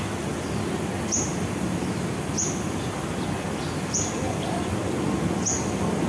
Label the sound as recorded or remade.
recorded